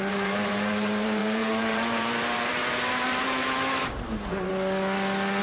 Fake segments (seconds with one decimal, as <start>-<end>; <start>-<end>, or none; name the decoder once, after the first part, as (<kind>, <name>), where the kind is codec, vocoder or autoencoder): 0.0-4.5 (vocoder, BigVGAN v2)